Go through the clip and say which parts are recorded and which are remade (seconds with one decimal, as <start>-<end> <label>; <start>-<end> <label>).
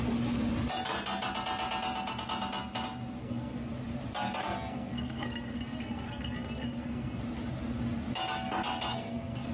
0.0-3.2 recorded; 3.2-3.7 remade; 3.7-4.4 recorded; 4.4-7.2 remade; 7.2-8.9 recorded; 8.9-9.5 remade